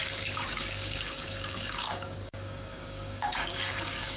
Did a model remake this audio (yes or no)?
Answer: yes